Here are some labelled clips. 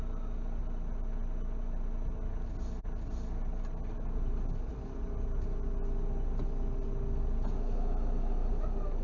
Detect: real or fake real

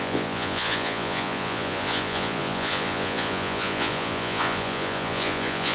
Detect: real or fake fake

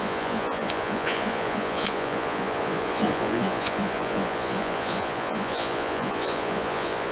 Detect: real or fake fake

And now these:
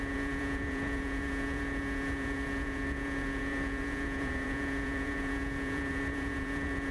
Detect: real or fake fake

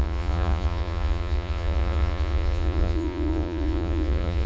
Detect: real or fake fake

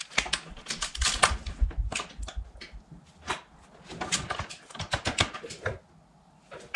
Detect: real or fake real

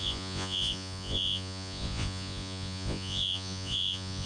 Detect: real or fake fake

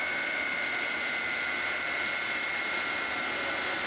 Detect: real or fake real